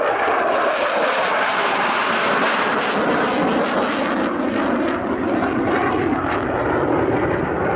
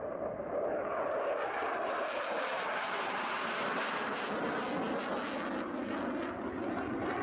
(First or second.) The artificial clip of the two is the first